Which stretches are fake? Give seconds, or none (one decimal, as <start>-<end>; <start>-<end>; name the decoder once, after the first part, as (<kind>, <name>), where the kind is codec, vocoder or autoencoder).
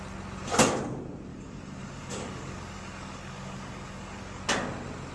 1.3-4.4 (codec, DAC)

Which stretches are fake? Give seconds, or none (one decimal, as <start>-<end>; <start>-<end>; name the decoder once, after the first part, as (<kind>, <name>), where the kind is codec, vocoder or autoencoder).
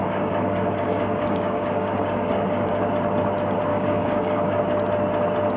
0.0-2.8 (codec, DAC); 3.7-4.6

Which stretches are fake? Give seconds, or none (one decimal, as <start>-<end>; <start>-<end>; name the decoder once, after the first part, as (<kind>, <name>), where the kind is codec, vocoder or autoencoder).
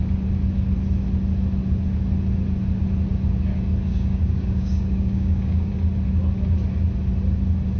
3.9-5.7 (codec, DAC)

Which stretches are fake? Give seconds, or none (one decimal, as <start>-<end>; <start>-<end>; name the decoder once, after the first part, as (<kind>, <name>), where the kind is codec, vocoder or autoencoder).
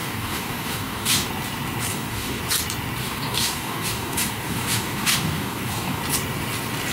0.0-1.3 (codec, DAC); 1.9-2.4; 3.0-6.0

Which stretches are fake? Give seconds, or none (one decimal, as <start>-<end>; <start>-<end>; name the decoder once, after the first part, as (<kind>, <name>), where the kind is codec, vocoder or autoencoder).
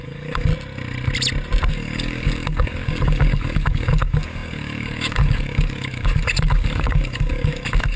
0.0-0.5 (codec, DAC); 1.7-8.0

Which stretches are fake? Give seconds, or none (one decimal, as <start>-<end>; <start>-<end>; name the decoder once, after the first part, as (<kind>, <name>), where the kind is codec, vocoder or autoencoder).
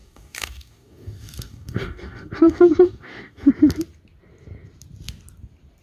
0.0-3.5 (codec, DAC)